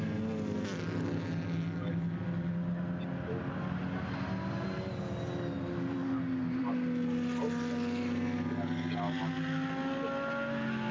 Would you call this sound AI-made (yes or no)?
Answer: no